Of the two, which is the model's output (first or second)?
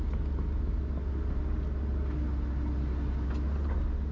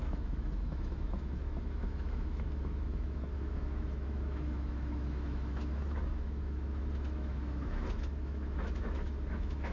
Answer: second